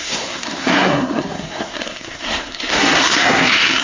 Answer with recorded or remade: remade